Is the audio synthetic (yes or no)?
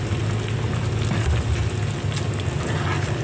no